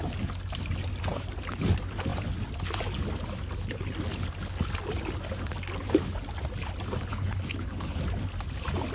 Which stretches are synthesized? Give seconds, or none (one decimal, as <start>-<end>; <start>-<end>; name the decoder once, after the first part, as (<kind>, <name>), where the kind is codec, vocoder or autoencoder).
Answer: 7.1-8.0 (codec, HILCodec)